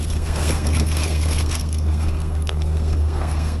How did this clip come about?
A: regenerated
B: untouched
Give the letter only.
A